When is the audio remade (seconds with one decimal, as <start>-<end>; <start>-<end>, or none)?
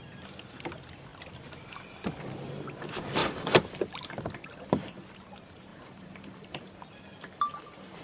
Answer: 3.2-3.9; 5.7-6.6; 7.1-8.0